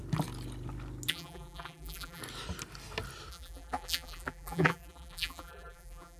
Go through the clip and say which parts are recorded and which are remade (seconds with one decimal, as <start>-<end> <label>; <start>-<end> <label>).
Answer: 0.0-1.1 recorded; 1.1-2.2 remade; 2.2-3.3 recorded; 3.3-6.2 remade